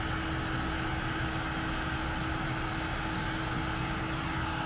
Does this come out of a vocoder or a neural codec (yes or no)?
no